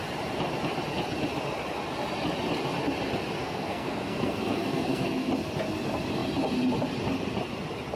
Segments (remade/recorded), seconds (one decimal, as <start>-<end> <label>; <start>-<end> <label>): 0.0-3.4 recorded; 3.4-5.3 remade; 5.3-8.0 recorded